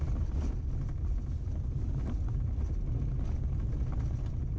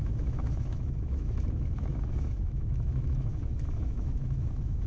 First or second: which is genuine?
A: first